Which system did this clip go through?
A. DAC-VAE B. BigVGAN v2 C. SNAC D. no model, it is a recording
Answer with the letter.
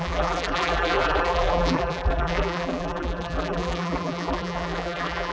B